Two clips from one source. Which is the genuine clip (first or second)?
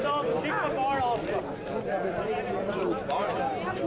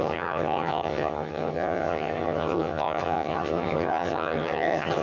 first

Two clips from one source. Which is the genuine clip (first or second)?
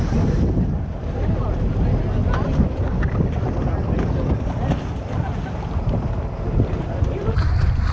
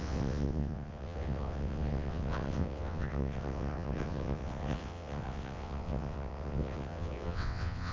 first